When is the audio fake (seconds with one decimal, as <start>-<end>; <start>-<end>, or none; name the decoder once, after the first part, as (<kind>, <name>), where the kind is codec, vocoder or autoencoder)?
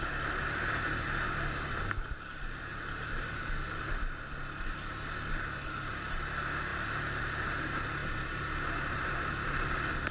none